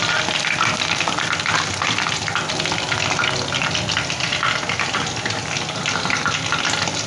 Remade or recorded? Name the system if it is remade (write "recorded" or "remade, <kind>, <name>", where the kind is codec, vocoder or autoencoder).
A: recorded